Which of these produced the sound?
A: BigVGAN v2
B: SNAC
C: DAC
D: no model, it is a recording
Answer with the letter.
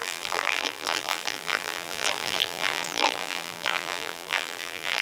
A